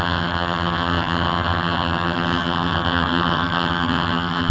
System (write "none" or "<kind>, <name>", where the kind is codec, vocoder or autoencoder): vocoder, HiFi-GAN